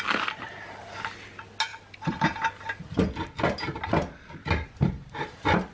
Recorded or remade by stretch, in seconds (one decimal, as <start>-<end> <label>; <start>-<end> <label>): 0.0-5.7 recorded